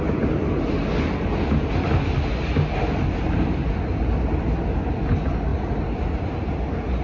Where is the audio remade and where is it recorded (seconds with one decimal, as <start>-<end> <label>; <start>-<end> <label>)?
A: 0.0-5.5 recorded; 5.5-6.5 remade; 6.5-7.0 recorded